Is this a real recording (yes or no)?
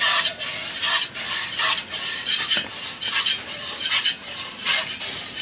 yes